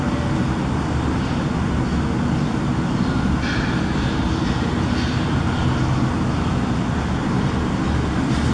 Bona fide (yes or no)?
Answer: yes